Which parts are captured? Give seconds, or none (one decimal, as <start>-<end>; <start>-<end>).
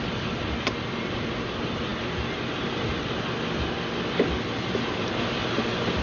0.0-6.0